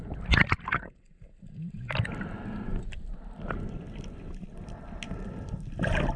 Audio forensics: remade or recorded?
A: recorded